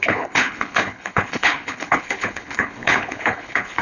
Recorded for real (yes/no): no